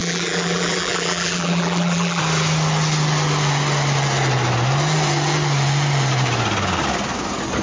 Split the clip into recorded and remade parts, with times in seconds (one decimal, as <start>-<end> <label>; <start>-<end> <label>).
0.0-2.2 remade; 2.2-7.6 recorded